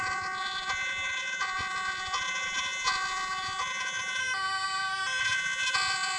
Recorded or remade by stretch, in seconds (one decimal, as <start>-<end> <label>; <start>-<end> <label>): 0.0-4.2 remade; 4.2-5.2 recorded; 5.2-6.2 remade